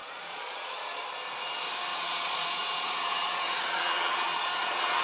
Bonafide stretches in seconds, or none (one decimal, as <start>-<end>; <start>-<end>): 1.0-1.9